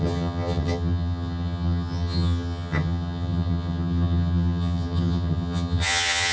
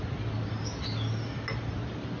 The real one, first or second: second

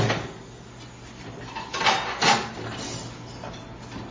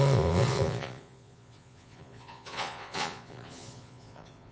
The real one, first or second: first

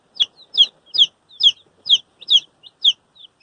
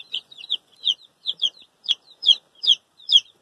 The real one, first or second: first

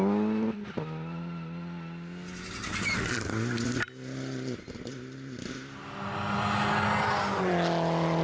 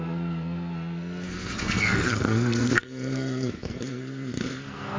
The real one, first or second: first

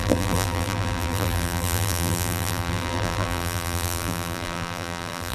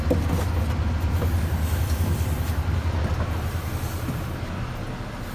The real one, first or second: second